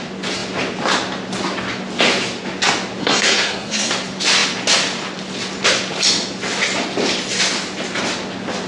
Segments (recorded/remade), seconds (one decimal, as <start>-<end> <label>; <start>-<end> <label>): 0.0-3.0 recorded; 3.0-3.9 remade; 3.9-8.7 recorded